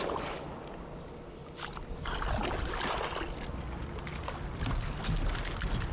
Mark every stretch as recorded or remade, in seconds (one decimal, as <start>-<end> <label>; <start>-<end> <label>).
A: 0.0-5.9 recorded